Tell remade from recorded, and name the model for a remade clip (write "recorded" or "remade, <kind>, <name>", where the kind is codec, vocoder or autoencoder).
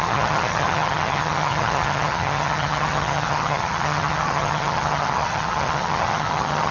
remade, vocoder, HiFi-GAN